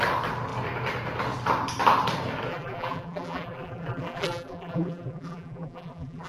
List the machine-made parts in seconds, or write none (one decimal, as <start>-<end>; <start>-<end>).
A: 2.5-6.3

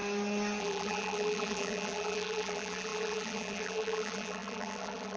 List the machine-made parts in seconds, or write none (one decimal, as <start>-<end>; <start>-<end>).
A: 0.6-5.2

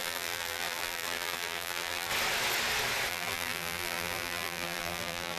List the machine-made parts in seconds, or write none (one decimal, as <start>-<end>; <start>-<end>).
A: 0.0-2.1; 3.1-5.4

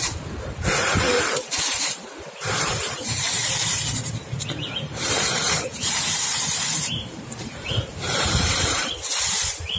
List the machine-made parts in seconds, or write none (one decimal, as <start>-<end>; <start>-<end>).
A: 0.0-8.8; 9.3-9.8

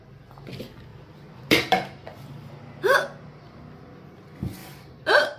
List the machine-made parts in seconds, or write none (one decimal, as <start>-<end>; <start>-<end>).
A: 0.9-2.5; 4.6-5.4

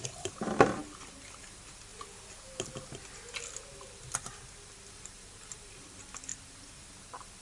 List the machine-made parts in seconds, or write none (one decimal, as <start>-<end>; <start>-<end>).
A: 0.0-1.9; 3.6-7.4